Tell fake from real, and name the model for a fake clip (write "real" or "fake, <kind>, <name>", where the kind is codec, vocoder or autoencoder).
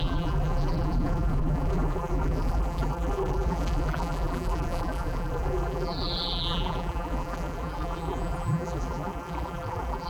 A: fake, vocoder, BigVGAN v2